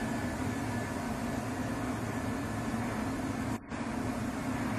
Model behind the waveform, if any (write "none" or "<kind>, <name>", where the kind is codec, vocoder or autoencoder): none